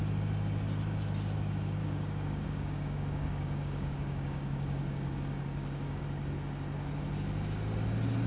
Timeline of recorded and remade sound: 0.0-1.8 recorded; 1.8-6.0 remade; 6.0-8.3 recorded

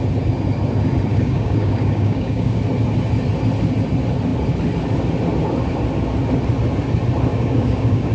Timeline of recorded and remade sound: 0.0-1.1 recorded; 1.1-2.6 remade; 2.6-7.3 recorded; 7.3-8.1 remade